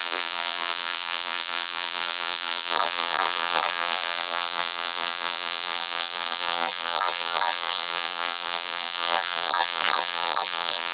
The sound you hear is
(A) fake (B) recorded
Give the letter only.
A